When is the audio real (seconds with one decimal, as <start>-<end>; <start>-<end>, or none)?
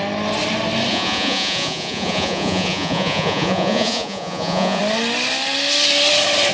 0.0-0.9; 4.8-6.5